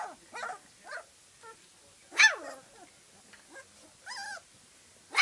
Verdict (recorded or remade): recorded